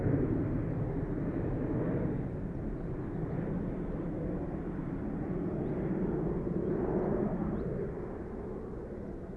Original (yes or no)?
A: yes